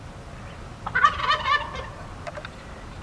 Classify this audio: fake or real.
real